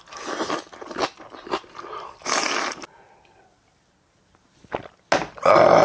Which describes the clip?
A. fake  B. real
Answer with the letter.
B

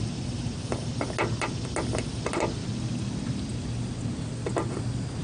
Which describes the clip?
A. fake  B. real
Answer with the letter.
B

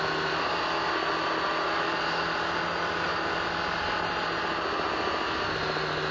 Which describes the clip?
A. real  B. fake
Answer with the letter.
A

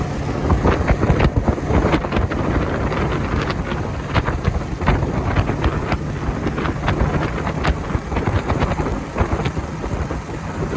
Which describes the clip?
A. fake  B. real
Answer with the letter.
B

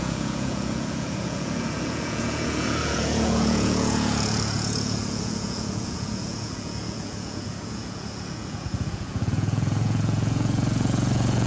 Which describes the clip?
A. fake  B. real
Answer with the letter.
A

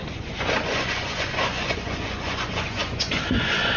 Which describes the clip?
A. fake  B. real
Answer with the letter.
A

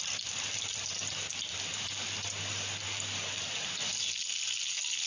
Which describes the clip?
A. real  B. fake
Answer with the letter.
A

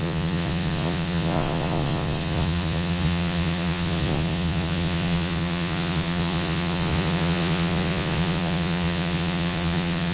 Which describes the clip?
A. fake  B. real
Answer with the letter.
A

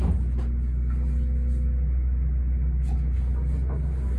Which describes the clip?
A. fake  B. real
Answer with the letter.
B